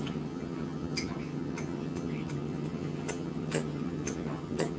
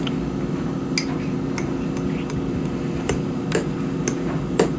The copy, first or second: first